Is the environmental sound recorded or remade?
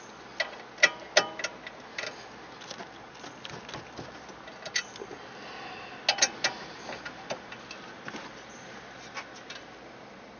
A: recorded